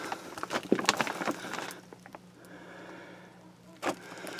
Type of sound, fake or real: real